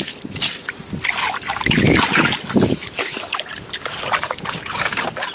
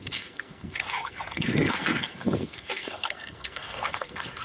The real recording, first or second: first